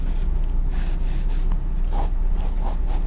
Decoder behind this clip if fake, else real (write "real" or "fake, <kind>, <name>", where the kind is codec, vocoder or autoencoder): real